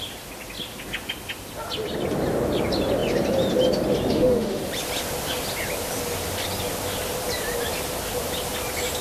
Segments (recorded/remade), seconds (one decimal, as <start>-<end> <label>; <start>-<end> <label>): 0.0-4.1 recorded; 4.1-4.6 remade; 4.6-9.0 recorded